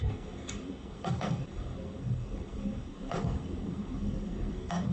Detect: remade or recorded remade